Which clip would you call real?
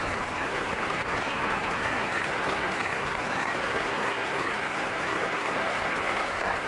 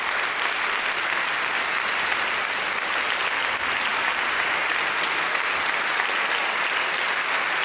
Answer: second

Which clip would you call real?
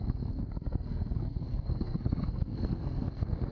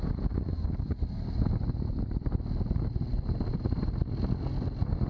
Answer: second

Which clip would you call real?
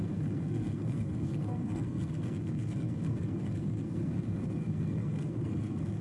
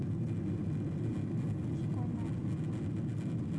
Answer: second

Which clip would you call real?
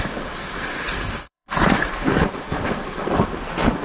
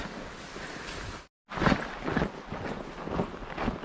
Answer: second